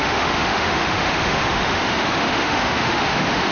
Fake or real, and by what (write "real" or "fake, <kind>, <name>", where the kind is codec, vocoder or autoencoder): fake, autoencoder, DAC-VAE